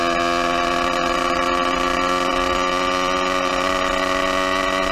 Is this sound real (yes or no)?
yes